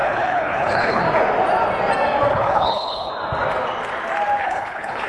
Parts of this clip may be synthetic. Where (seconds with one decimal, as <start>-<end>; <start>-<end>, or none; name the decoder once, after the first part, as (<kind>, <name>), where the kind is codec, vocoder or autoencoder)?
0.0-1.0 (codec, HILCodec); 2.3-3.1; 4.4-5.1